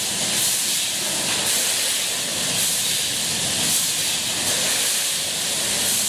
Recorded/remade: recorded